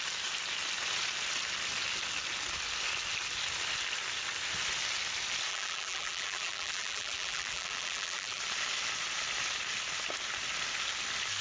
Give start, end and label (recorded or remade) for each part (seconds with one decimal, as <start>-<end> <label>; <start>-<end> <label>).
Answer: 0.0-5.5 recorded; 5.5-8.4 remade; 8.4-11.4 recorded